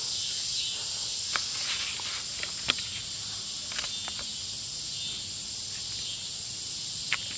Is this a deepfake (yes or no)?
no